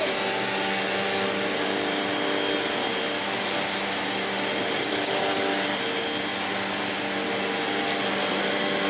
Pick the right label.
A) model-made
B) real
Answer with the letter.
B